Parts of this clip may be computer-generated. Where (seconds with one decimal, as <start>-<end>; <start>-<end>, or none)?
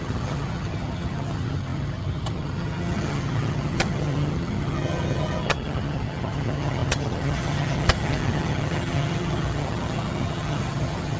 0.0-11.2